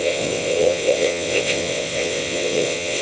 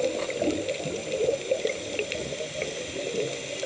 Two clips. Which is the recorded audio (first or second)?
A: second